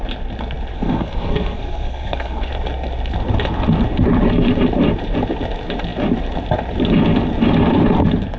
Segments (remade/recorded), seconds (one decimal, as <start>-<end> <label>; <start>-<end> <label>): 0.0-0.7 recorded; 0.7-2.5 remade; 2.5-8.4 recorded